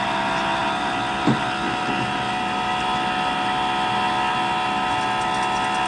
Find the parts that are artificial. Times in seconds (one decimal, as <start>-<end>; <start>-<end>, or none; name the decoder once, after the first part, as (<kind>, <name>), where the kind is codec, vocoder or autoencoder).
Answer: none